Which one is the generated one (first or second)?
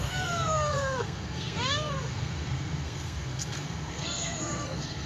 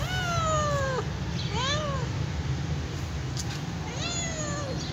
first